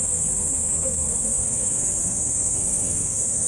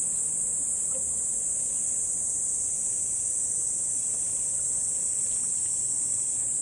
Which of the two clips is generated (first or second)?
first